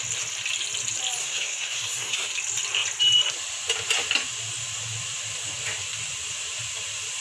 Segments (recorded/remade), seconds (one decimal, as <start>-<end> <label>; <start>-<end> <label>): 0.0-1.2 recorded; 1.2-2.3 remade; 2.3-7.2 recorded